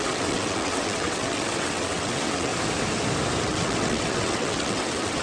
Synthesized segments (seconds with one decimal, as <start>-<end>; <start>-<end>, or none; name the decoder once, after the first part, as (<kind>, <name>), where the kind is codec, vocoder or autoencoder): 0.0-2.5 (vocoder, WaveNeXt); 3.4-5.2